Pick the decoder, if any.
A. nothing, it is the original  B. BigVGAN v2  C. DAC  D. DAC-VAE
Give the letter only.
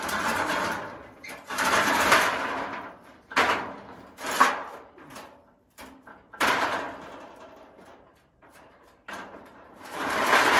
B